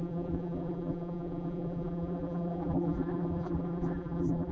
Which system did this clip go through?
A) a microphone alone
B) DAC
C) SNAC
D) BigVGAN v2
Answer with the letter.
D